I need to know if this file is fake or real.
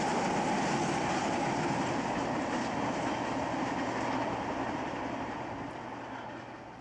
real